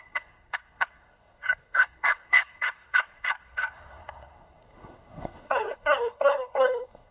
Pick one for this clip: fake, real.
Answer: fake